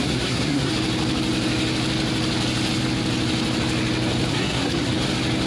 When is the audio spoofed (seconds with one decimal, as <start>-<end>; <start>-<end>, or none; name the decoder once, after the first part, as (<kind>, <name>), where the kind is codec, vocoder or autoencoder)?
0.0-0.7 (codec, SNAC); 4.3-4.9